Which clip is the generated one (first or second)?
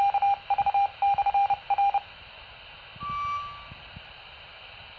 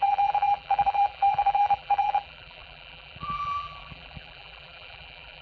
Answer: second